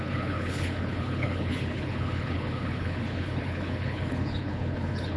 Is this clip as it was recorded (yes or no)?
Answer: no